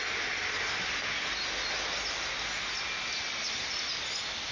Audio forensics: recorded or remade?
recorded